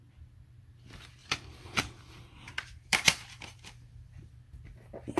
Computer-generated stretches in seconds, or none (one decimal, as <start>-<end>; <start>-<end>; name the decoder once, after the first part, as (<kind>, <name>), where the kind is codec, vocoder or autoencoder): 1.2-4.3 (vocoder, BigVGAN v2)